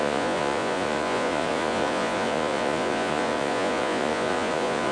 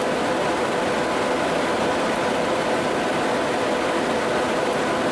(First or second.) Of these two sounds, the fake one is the first